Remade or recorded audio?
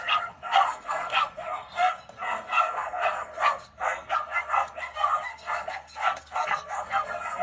remade